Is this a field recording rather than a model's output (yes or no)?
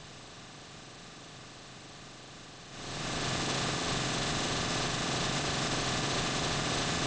no